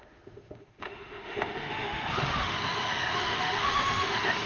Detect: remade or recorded remade